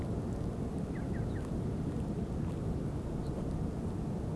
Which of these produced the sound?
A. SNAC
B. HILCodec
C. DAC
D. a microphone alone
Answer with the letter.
D